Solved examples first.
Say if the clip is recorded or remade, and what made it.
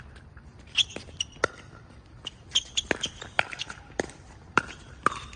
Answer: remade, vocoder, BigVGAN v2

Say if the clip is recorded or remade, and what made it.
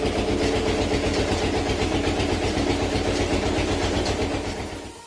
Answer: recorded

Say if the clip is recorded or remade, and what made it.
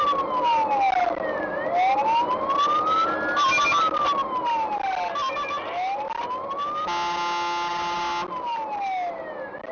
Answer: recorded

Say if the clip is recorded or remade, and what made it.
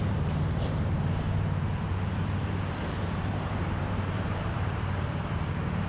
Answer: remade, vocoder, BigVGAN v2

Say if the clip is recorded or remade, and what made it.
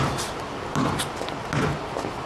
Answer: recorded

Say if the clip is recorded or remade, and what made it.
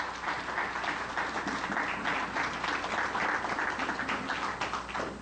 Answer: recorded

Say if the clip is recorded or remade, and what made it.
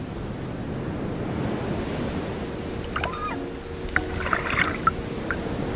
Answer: recorded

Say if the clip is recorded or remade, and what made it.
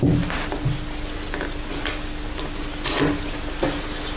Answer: recorded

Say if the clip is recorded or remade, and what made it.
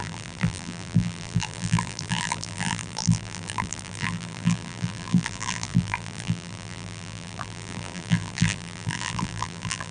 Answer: remade, vocoder, BigVGAN v2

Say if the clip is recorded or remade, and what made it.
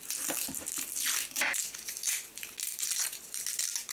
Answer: recorded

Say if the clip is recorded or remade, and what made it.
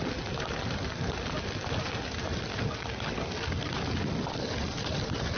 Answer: recorded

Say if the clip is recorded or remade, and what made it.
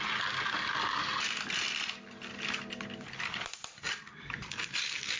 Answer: recorded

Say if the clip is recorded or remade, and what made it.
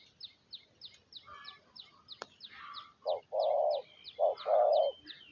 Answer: recorded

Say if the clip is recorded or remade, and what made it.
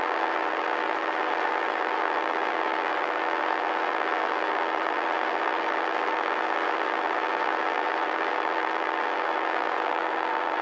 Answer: remade, vocoder, BigVGAN v2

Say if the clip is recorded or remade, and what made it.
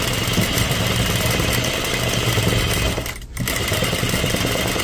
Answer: remade, vocoder, BigVGAN v2